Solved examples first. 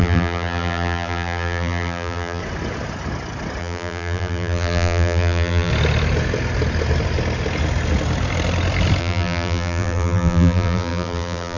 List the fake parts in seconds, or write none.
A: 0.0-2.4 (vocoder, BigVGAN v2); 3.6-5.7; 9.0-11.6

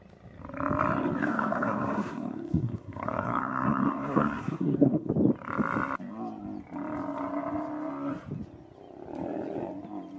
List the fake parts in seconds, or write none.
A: 1.2-5.1 (codec, SNAC)

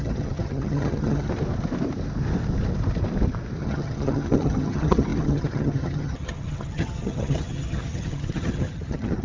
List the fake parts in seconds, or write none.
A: 0.0-1.3 (vocoder, HiFi-GAN); 3.6-9.2

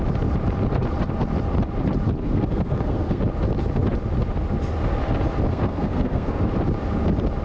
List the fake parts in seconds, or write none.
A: 2.2-3.2 (codec, SNAC); 5.5-6.4